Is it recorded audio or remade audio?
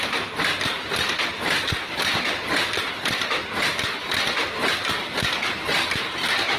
recorded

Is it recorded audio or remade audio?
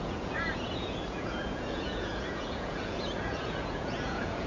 remade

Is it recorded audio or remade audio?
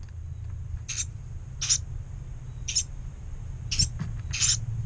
recorded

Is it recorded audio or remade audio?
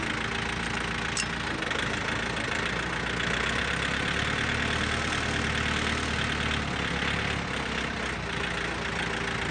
recorded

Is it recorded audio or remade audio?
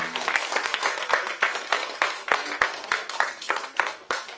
remade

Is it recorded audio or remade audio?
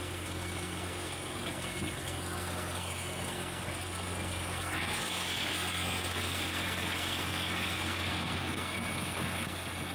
remade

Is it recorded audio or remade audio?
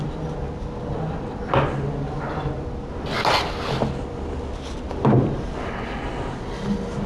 recorded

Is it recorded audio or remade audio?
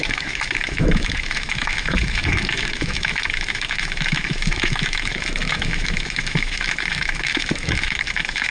remade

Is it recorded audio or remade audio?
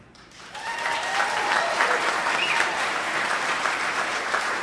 remade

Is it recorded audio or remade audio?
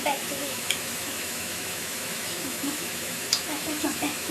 remade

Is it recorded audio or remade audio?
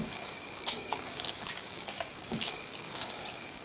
remade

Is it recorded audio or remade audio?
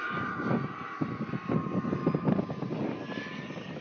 recorded